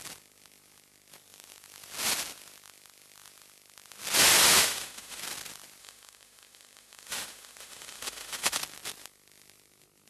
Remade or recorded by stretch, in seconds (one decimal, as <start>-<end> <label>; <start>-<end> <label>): 0.0-4.5 recorded; 4.5-5.2 remade; 5.2-5.8 recorded; 5.8-8.6 remade; 8.6-10.1 recorded